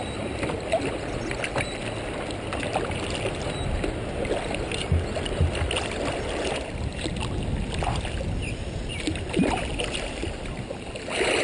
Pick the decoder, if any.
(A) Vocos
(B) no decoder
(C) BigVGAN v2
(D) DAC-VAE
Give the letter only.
B